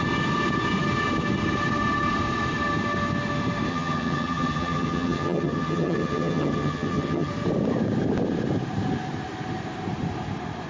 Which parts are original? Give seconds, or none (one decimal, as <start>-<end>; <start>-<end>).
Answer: 0.0-3.7; 7.3-10.7